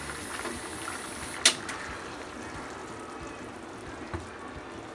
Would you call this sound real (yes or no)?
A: yes